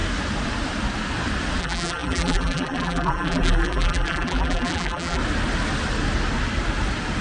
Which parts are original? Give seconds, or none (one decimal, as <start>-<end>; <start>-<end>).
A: 0.0-1.6; 5.2-7.2